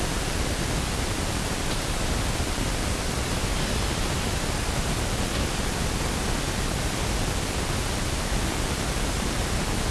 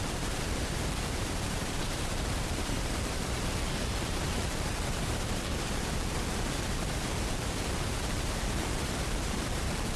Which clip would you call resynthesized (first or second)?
second